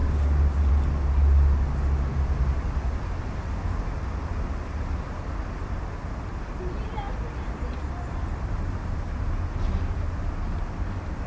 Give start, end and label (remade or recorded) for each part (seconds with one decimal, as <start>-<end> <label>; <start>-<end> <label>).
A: 0.0-11.3 recorded